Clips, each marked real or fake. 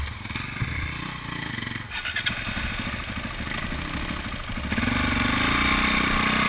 real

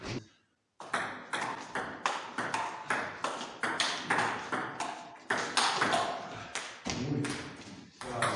real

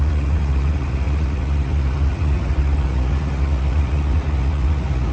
fake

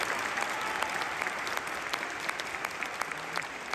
real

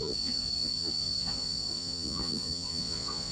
fake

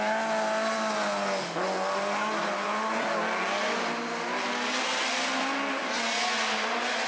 real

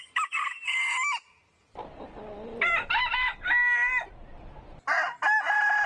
real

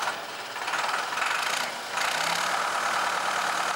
real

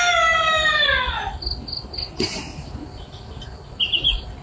real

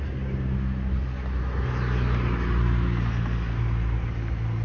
real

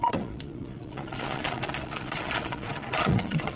fake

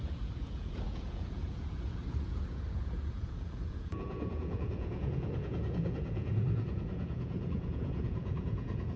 fake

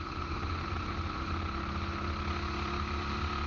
real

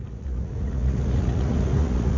fake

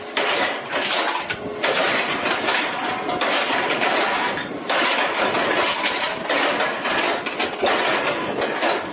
real